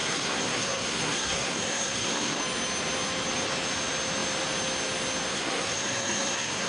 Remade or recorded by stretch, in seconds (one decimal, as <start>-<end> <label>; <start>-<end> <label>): 0.0-2.4 remade; 2.4-5.3 recorded; 5.3-6.7 remade